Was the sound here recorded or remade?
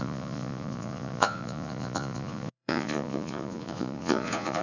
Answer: remade